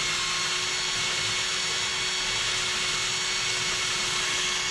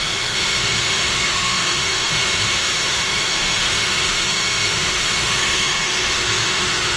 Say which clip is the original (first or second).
first